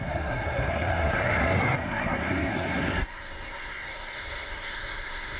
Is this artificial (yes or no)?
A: yes